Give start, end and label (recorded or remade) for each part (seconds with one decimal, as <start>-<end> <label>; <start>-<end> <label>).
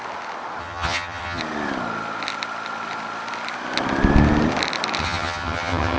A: 0.0-0.6 recorded; 0.6-1.4 remade; 1.4-5.0 recorded; 5.0-6.0 remade